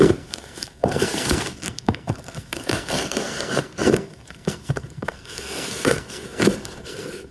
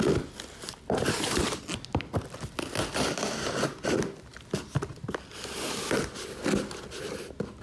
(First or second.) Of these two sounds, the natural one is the second